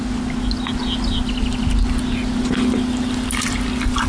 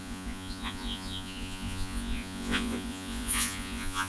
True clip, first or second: first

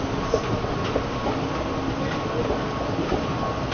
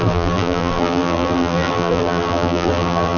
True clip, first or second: first